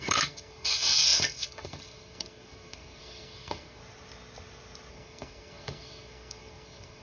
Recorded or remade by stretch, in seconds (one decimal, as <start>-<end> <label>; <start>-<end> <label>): 0.0-3.8 remade; 3.8-4.9 recorded; 4.9-7.0 remade